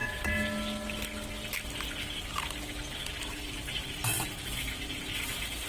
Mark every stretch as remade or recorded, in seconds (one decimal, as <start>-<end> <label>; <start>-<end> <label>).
0.0-5.7 recorded